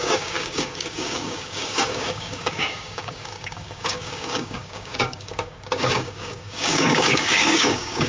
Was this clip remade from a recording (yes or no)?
yes